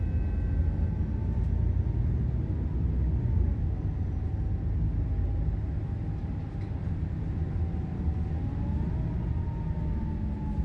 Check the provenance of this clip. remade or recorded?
recorded